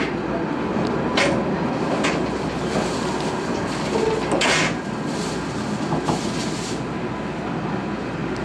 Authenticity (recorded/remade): recorded